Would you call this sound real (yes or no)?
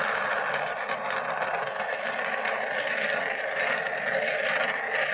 yes